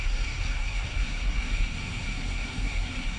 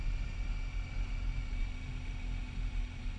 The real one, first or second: second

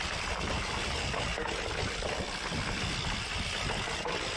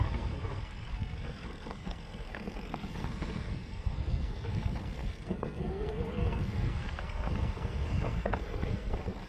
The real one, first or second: first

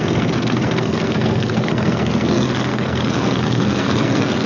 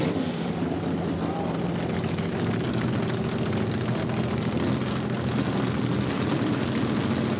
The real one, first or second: second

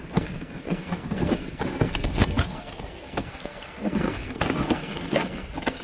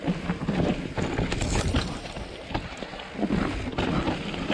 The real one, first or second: second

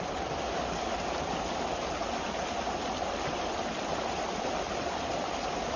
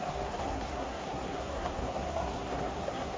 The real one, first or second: first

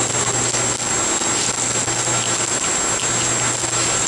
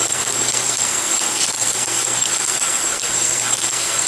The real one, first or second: first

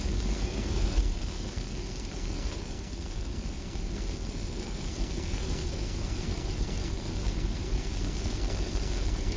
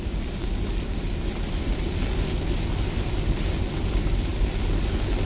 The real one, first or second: second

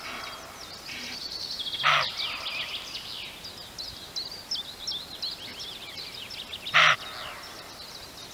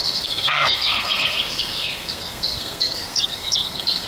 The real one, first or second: first